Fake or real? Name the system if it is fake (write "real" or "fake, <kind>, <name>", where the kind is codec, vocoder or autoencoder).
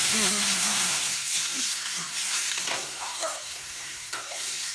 fake, codec, SNAC